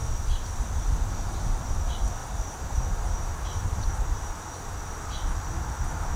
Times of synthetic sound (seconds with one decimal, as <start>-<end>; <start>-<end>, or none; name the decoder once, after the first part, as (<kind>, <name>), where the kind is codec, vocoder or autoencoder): 2.2-4.3 (vocoder, BigVGAN v2)